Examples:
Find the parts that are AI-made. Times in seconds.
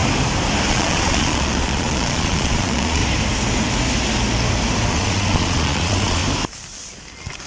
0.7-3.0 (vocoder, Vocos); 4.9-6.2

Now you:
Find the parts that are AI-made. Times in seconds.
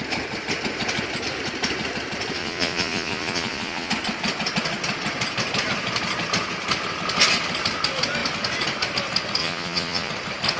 2.4-3.9 (vocoder, Vocos); 9.4-10.1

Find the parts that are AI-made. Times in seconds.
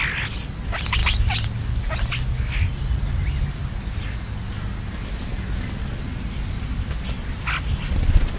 none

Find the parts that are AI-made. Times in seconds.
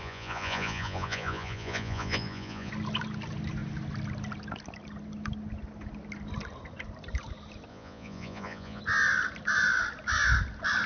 0.0-2.7 (vocoder, Vocos); 7.7-8.8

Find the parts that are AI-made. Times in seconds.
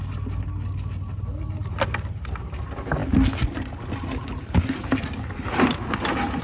none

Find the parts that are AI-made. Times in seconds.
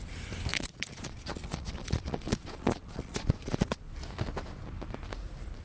0.5-3.9 (vocoder, Vocos)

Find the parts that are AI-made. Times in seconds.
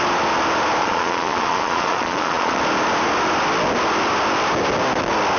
0.8-2.6 (vocoder, Vocos)